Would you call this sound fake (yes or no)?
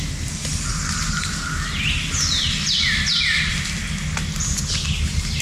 no